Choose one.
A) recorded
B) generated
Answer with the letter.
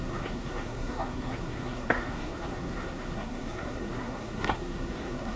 B